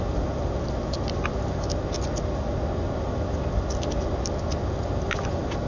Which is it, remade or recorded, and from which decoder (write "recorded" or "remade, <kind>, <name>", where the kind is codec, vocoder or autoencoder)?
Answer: recorded